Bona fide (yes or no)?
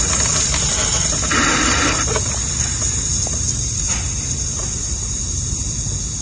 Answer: yes